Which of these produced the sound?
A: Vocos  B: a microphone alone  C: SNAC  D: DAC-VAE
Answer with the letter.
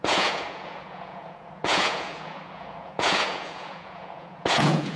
A